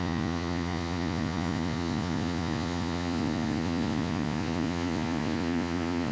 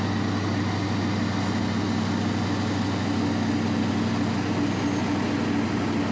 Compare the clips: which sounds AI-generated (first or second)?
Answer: first